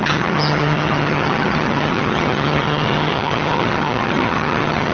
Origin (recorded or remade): remade